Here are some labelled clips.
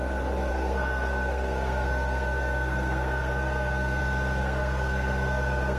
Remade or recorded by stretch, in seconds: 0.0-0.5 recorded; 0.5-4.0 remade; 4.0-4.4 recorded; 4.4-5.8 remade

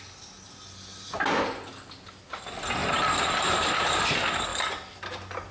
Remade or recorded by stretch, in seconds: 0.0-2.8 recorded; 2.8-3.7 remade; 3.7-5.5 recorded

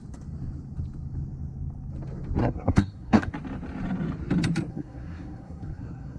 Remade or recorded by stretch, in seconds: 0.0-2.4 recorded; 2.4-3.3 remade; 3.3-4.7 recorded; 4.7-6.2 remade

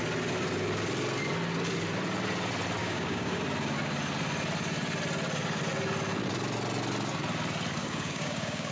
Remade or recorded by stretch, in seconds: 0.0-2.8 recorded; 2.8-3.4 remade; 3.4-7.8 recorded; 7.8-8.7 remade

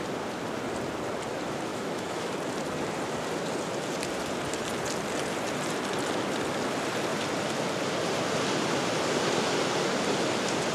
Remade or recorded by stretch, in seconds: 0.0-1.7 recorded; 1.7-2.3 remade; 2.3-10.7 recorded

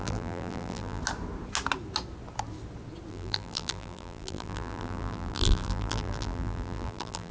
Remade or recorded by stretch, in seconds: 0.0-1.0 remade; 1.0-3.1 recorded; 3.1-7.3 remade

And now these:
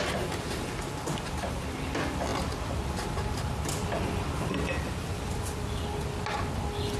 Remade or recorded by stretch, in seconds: 0.0-7.0 recorded

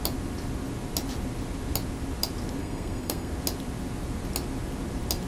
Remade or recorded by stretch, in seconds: 0.0-2.6 recorded; 2.6-3.3 remade; 3.3-5.3 recorded